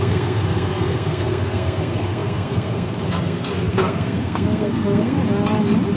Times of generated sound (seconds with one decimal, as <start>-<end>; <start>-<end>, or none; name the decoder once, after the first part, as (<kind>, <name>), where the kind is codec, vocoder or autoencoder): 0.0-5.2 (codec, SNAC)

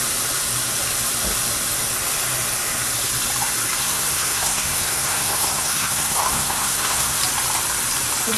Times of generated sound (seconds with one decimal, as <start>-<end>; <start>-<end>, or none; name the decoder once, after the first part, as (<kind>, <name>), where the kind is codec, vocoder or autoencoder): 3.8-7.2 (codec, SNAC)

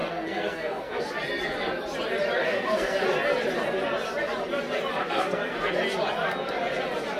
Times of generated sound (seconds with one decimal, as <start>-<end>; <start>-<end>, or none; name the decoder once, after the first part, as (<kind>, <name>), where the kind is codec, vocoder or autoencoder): 0.0-1.0 (codec, SNAC); 2.4-3.0; 5.0-5.7